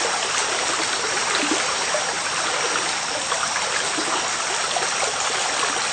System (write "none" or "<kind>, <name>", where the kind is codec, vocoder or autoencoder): none